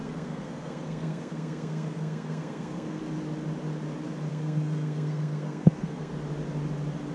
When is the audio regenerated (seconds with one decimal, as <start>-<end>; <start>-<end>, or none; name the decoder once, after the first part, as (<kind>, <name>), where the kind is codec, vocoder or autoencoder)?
0.0-3.0 (codec, SNAC); 4.3-6.1